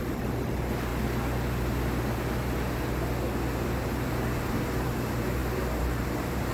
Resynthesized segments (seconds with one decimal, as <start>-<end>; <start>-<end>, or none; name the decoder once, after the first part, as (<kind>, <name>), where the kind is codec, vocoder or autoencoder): 0.0-0.9 (vocoder, BigVGAN v2); 4.8-6.5